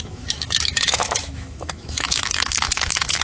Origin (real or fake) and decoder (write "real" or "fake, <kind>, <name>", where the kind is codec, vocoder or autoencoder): fake, autoencoder, DAC-VAE